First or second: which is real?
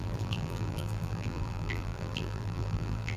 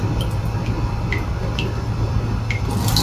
second